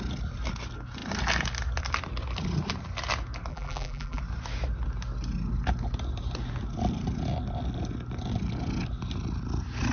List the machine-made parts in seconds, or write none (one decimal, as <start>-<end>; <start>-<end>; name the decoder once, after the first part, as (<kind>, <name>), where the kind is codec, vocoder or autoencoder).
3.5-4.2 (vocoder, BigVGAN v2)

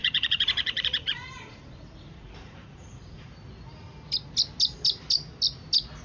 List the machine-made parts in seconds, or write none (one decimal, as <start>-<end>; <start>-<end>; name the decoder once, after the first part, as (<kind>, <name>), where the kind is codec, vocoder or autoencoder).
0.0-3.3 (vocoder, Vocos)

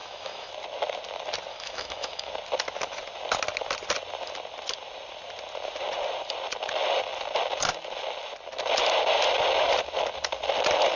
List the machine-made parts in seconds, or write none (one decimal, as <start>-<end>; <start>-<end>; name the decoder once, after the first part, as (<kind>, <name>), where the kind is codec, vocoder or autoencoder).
0.0-0.5 (autoencoder, DAC-VAE); 1.5-2.3